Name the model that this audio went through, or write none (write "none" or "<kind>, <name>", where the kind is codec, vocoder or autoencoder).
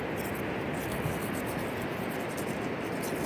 none